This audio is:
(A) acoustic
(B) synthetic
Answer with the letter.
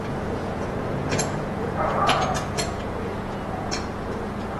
B